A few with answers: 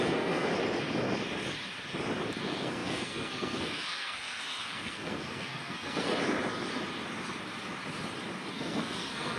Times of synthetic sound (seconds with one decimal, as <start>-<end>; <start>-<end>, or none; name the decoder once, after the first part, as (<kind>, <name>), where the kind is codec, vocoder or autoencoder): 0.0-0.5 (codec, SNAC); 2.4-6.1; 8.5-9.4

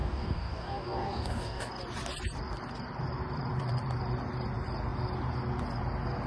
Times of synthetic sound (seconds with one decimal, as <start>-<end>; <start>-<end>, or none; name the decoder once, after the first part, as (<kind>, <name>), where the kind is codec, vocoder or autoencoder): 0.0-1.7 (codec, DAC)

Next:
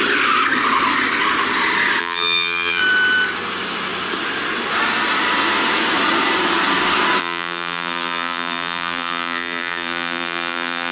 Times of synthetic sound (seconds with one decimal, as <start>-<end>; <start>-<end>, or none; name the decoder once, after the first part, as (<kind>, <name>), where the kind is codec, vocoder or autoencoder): 2.0-2.8 (vocoder, BigVGAN v2); 7.2-10.9

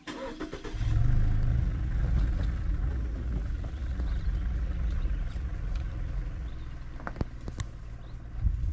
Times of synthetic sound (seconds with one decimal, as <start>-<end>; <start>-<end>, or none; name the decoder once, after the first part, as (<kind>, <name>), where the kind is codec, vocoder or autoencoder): 1.5-6.5 (vocoder, Vocos)

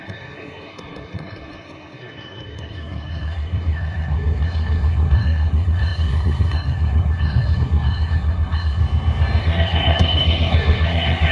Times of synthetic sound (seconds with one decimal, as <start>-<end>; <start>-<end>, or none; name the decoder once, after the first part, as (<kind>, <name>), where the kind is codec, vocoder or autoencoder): 0.0-8.8 (codec, SNAC); 9.4-11.3

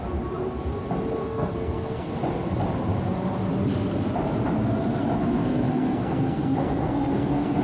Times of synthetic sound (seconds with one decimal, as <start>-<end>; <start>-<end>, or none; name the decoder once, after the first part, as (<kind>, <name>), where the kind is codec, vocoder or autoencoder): 1.2-2.1 (codec, SNAC); 5.0-7.6